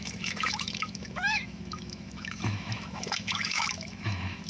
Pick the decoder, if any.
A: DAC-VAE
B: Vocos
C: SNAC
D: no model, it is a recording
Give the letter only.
A